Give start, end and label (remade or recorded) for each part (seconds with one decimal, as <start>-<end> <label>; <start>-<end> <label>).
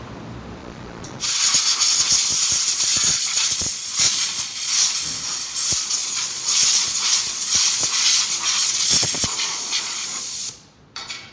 0.0-0.6 recorded; 0.6-1.2 remade; 1.2-2.9 recorded; 2.9-4.9 remade; 4.9-6.0 recorded; 6.0-11.3 remade